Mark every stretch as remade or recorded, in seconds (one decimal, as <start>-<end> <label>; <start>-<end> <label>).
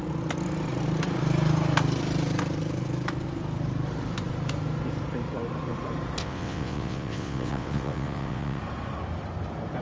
0.0-6.2 recorded; 6.2-8.6 remade; 8.6-9.8 recorded